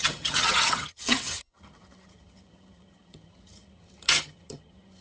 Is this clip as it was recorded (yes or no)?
no